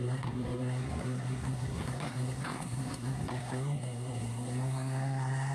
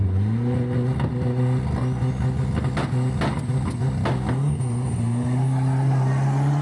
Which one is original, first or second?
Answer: second